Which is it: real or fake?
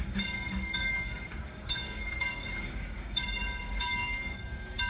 fake